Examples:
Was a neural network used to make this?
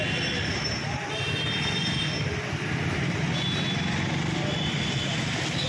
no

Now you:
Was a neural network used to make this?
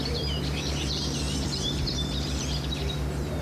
yes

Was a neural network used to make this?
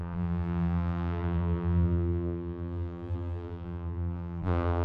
yes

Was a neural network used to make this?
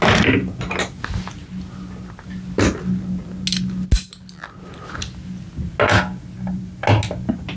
no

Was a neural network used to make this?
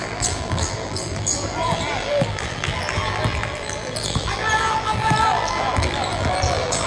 yes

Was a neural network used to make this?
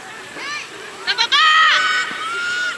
yes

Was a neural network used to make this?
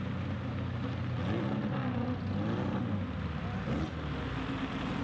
no